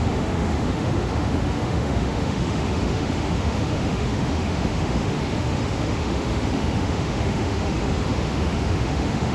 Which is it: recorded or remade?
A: remade